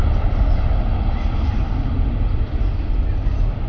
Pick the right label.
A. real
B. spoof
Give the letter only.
A